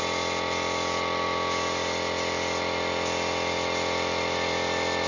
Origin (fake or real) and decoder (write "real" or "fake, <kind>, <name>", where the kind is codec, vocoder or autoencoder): real